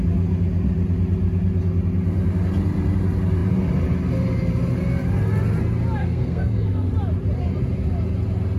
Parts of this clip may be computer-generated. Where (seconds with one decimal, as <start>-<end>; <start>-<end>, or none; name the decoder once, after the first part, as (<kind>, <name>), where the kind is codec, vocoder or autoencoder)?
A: 6.0-6.9 (codec, SNAC)